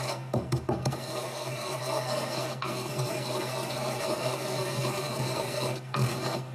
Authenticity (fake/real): fake